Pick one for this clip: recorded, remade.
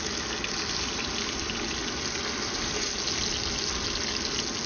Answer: recorded